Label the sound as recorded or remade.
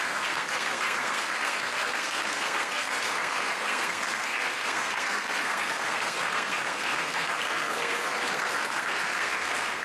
remade